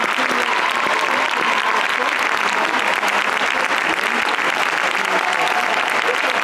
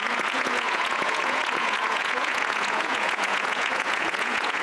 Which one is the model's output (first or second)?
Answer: second